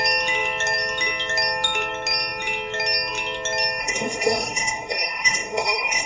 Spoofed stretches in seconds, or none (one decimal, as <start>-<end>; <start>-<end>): 3.8-6.1